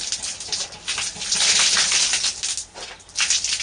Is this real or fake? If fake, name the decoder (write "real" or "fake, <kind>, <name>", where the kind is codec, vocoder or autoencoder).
real